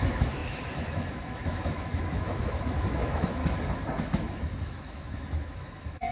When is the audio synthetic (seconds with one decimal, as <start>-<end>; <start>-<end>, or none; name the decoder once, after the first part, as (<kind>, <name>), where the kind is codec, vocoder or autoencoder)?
0.0-3.4 (autoencoder, DAC-VAE); 4.0-6.1